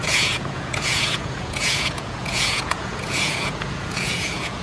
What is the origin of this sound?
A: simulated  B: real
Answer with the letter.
A